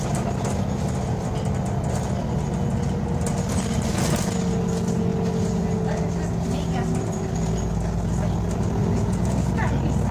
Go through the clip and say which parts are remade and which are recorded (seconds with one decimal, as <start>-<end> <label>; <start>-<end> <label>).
0.0-8.8 recorded; 8.8-9.5 remade; 9.5-10.1 recorded